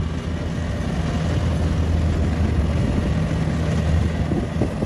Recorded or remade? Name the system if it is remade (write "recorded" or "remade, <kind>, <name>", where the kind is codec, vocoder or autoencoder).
recorded